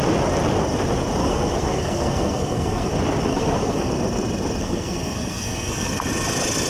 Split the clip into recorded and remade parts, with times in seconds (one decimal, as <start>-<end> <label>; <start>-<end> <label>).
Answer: 0.0-1.2 recorded; 1.2-2.9 remade; 2.9-3.3 recorded; 3.3-3.9 remade; 3.9-4.6 recorded; 4.6-5.9 remade; 5.9-6.7 recorded